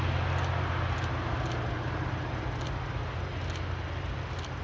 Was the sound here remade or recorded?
recorded